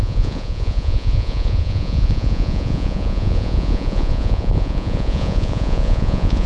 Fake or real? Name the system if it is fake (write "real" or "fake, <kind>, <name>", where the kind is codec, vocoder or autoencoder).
fake, vocoder, Vocos